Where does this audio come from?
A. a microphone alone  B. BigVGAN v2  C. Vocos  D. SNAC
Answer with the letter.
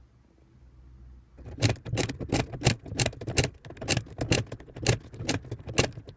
A